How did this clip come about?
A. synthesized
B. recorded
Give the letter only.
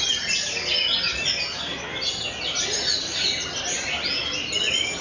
B